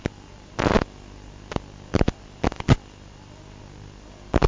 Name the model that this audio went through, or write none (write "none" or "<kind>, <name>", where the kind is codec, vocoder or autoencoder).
none